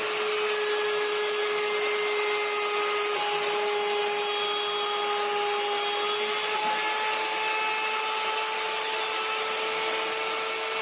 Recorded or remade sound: recorded